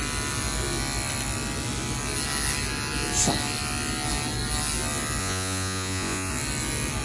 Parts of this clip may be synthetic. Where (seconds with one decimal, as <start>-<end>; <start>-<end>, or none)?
5.2-6.3